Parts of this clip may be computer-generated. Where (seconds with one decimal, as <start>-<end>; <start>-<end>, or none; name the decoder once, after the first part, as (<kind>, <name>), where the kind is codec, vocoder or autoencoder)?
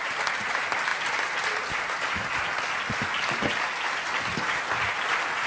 none